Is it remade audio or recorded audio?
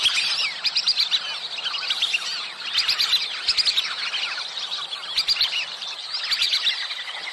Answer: remade